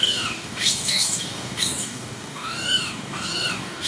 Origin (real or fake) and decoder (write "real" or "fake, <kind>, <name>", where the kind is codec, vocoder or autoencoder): fake, codec, DAC